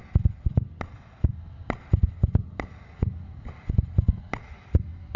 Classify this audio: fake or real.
real